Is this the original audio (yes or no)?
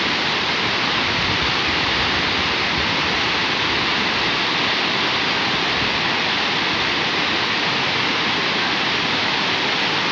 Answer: yes